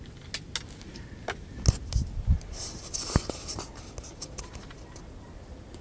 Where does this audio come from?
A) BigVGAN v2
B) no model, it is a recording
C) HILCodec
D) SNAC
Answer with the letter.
B